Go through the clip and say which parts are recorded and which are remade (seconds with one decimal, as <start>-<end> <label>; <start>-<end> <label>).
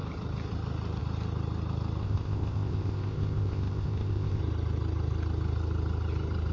0.0-2.0 recorded; 2.0-4.4 remade; 4.4-6.5 recorded